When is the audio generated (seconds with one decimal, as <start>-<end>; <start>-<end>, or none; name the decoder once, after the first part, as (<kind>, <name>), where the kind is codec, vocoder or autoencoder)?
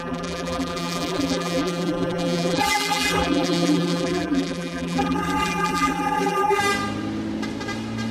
0.0-6.6 (vocoder, BigVGAN v2)